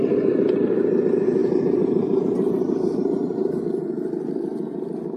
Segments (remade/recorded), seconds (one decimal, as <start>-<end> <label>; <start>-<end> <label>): 0.0-1.4 recorded; 1.4-3.6 remade; 3.6-5.2 recorded